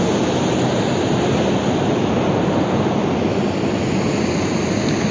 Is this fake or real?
real